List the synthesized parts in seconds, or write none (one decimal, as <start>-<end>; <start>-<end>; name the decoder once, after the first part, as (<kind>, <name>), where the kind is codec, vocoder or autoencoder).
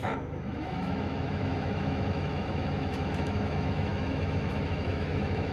0.0-5.5 (autoencoder, DAC-VAE)